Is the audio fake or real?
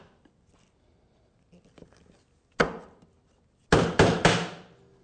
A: real